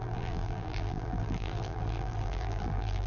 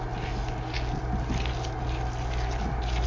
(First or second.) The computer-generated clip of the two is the first